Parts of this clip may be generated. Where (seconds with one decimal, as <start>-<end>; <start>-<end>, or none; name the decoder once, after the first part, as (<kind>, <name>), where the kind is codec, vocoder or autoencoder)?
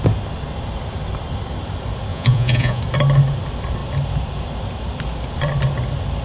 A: 2.1-2.8 (vocoder, Vocos)